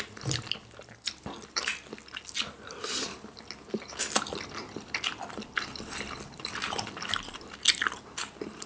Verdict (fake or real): real